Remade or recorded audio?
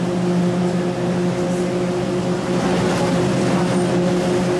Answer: recorded